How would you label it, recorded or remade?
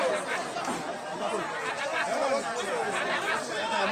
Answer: recorded